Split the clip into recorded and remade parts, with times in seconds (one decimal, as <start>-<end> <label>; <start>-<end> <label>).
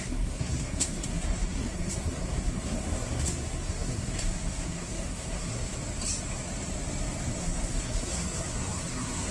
0.0-5.7 remade; 5.7-7.4 recorded; 7.4-9.3 remade